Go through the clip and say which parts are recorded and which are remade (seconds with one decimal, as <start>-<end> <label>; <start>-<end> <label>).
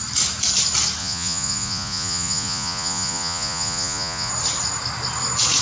0.0-1.0 recorded; 1.0-4.3 remade; 4.3-5.6 recorded